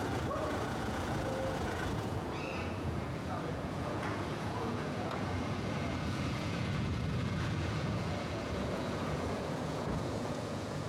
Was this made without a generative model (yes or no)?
no